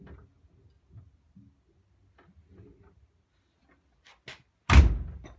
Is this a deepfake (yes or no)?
no